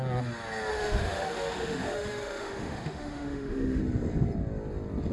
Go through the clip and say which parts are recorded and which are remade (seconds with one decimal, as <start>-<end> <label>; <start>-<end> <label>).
0.0-0.7 recorded; 0.7-3.8 remade; 3.8-5.1 recorded